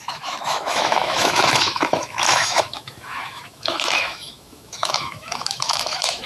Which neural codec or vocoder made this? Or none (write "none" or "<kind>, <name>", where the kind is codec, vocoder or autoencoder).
autoencoder, DAC-VAE